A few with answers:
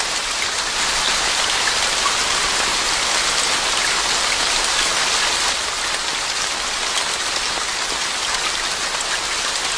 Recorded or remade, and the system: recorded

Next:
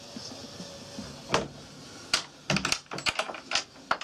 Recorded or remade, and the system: recorded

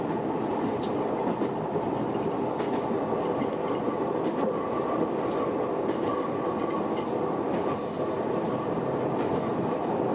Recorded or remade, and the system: recorded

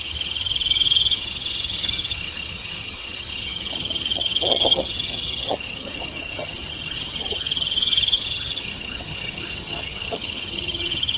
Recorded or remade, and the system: remade, vocoder, HiFi-GAN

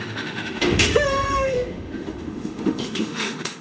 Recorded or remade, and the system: remade, autoencoder, DAC-VAE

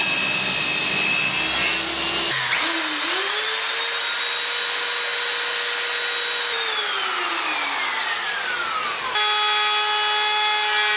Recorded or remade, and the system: recorded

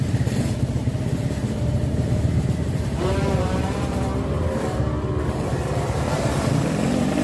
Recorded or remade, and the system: remade, vocoder, BigVGAN v2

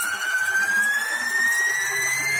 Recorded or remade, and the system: remade, vocoder, BigVGAN v2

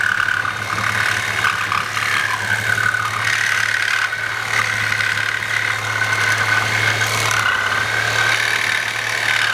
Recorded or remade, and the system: recorded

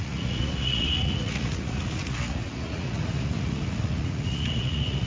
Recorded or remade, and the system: remade, vocoder, Vocos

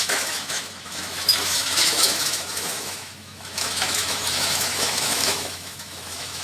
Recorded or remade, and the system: remade, autoencoder, DAC-VAE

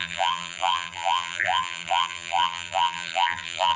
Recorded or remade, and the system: remade, vocoder, BigVGAN v2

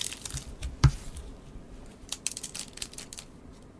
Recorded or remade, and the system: recorded